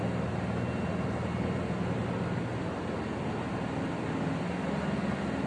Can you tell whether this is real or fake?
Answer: real